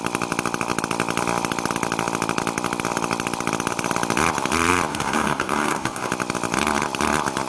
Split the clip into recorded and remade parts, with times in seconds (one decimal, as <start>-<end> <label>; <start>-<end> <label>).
0.0-4.9 recorded; 4.9-6.1 remade; 6.1-7.5 recorded